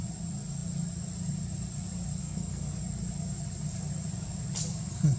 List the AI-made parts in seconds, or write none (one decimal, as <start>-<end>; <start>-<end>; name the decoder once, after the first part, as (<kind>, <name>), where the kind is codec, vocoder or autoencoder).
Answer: 2.2-2.8 (codec, SNAC)